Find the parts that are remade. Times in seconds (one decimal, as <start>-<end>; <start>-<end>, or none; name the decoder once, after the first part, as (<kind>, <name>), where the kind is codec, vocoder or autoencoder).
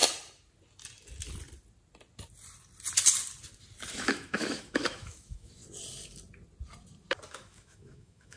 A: 3.9-5.6 (autoencoder, DAC-VAE); 7.3-8.4